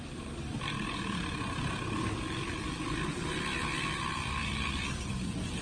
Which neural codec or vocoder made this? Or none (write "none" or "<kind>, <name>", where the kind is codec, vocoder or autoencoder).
vocoder, BigVGAN v2